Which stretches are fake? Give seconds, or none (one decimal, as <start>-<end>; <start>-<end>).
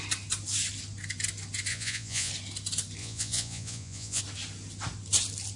1.7-2.3; 3.0-4.2